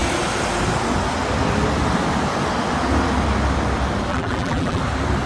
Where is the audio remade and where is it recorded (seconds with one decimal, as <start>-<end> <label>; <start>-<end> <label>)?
0.0-4.1 recorded; 4.1-4.8 remade; 4.8-5.3 recorded